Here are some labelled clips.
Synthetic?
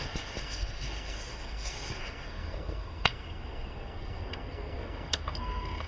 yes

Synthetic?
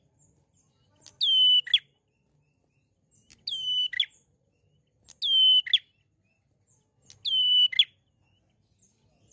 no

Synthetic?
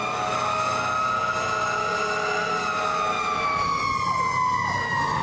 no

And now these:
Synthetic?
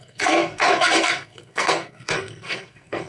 yes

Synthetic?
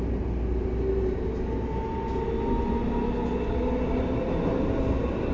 no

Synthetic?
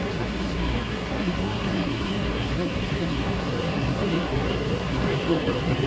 yes